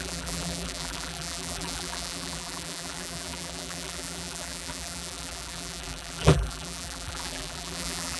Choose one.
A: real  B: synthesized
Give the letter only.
B